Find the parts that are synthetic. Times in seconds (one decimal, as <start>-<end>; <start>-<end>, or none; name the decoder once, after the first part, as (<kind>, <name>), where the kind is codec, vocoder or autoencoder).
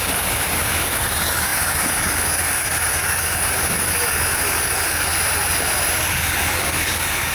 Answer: 0.0-5.1 (codec, DAC); 6.1-7.3